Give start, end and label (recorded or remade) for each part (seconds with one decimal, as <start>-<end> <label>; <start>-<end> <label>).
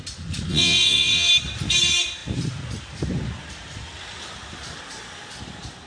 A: 0.0-0.5 recorded; 0.5-1.3 remade; 1.3-5.9 recorded